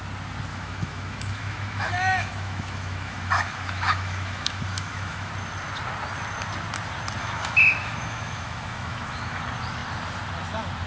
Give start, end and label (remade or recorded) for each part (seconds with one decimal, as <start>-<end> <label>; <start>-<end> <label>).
0.0-0.5 recorded; 0.5-5.3 remade; 5.3-7.2 recorded; 7.2-9.4 remade; 9.4-10.9 recorded